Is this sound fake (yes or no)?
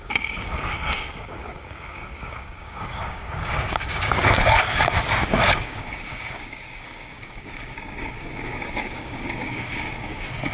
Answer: yes